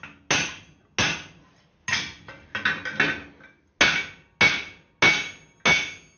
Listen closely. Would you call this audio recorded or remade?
recorded